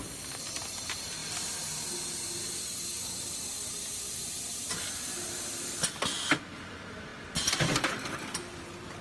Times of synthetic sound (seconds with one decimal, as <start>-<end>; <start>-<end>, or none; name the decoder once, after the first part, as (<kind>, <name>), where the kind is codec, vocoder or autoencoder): none